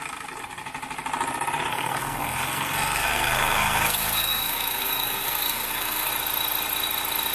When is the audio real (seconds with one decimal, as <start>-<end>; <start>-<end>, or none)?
0.0-1.7; 6.1-7.3